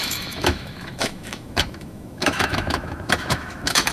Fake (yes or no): yes